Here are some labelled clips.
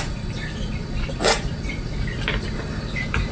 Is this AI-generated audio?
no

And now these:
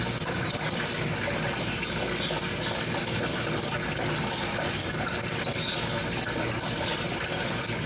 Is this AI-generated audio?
no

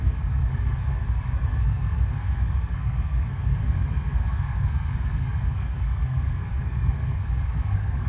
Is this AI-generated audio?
yes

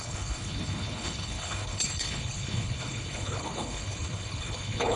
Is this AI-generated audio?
yes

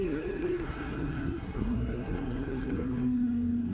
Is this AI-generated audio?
yes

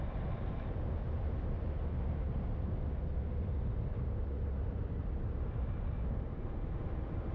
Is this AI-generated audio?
no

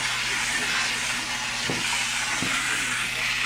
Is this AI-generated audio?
no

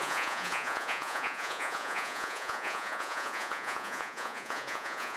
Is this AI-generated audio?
yes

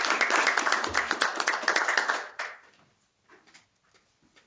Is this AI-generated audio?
no